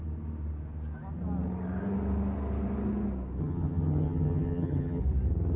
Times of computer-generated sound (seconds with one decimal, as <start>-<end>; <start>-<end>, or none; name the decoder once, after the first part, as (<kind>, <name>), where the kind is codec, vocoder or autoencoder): 3.4-5.0 (vocoder, HiFi-GAN)